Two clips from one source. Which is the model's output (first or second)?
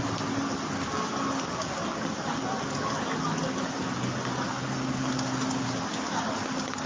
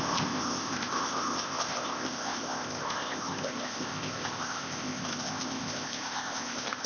second